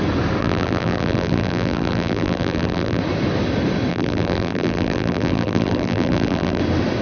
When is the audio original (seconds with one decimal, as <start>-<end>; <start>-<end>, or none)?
0.0-0.4; 3.0-3.9; 6.6-7.0